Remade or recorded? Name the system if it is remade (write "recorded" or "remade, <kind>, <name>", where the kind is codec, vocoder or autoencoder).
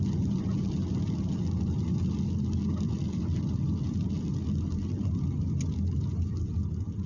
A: recorded